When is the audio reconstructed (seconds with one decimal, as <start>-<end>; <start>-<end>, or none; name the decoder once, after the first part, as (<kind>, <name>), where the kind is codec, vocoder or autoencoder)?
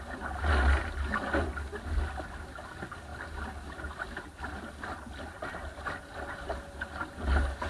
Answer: none